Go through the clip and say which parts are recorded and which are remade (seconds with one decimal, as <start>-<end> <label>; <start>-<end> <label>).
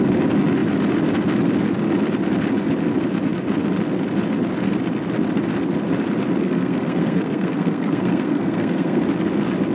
0.0-6.4 recorded; 6.4-9.0 remade; 9.0-9.7 recorded